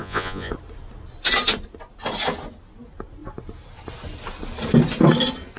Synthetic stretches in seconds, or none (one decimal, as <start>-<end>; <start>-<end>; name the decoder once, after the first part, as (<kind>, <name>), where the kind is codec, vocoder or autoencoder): 0.0-0.5 (vocoder, Vocos)